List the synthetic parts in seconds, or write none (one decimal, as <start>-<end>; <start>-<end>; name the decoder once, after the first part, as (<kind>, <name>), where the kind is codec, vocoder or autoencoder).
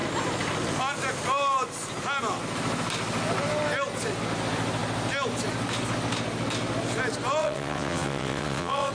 7.4-8.9 (vocoder, WaveNeXt)